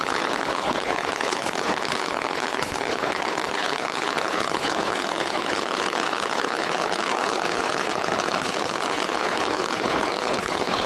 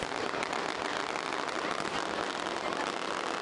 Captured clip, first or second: second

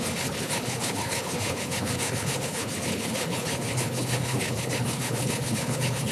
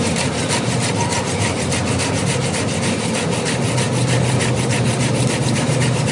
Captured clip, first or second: second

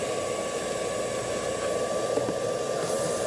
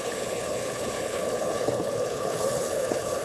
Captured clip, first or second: first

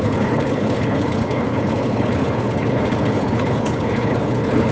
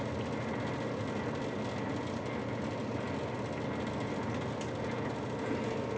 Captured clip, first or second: second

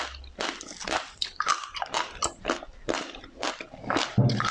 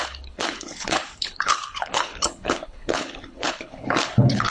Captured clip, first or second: first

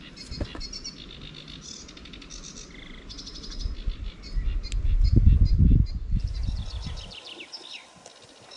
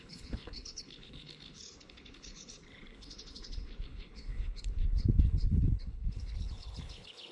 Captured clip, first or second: first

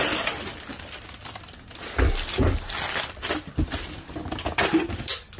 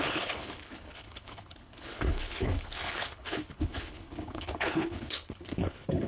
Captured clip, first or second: first